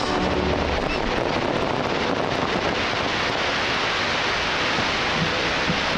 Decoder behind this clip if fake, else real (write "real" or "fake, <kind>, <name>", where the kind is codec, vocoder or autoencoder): real